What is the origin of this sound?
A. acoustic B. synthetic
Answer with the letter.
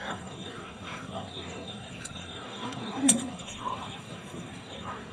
B